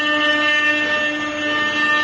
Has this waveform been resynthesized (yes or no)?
no